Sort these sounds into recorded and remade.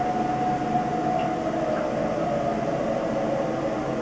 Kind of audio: recorded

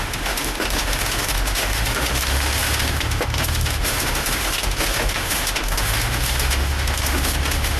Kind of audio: remade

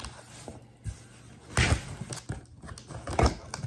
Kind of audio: recorded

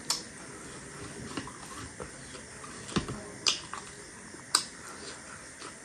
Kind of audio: recorded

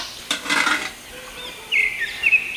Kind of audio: recorded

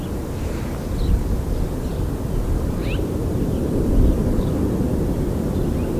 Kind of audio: recorded